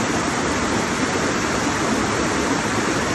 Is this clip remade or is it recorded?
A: recorded